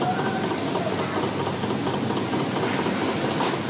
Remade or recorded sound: recorded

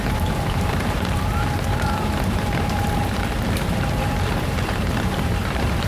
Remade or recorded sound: remade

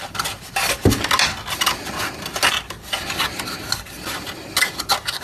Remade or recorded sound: recorded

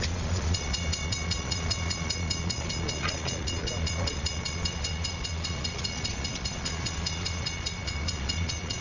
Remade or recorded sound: remade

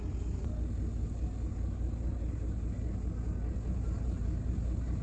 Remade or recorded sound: recorded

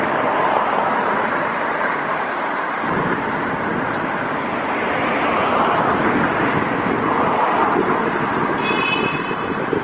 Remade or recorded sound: recorded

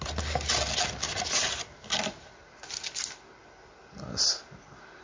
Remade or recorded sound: recorded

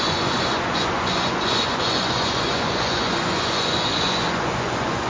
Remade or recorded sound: remade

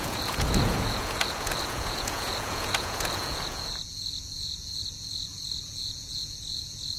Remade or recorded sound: remade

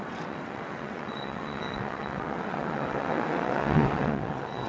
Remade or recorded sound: remade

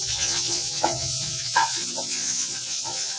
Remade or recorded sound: remade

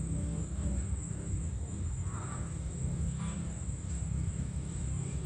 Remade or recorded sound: remade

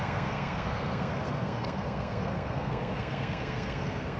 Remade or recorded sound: remade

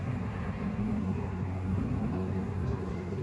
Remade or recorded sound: remade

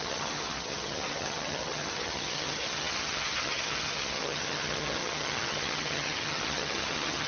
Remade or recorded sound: remade